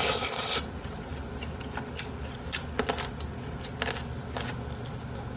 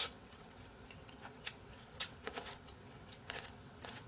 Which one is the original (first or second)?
first